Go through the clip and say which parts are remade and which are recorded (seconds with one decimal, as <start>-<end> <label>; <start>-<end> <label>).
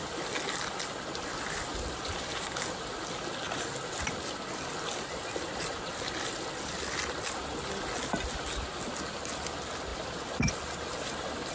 0.0-11.5 recorded